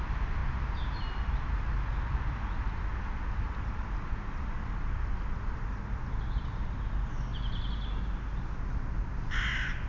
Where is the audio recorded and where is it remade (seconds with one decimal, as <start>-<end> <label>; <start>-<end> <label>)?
0.0-9.9 recorded